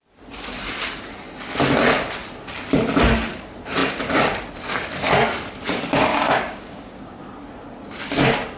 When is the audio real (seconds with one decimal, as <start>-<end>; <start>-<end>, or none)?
0.0-6.1; 7.2-8.6

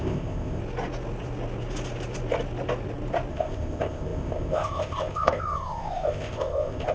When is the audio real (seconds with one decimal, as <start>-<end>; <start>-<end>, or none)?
0.6-3.3